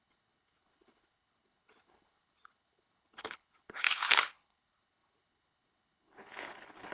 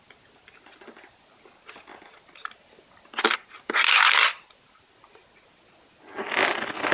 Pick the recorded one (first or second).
second